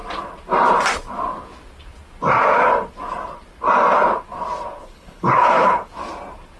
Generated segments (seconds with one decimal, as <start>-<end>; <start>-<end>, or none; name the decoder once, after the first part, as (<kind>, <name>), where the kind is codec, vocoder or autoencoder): 4.8-5.9 (codec, HILCodec)